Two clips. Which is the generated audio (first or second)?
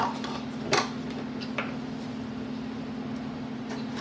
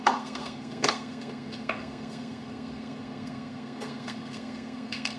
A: second